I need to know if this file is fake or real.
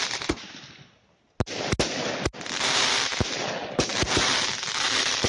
real